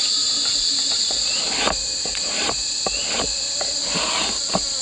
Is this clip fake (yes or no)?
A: no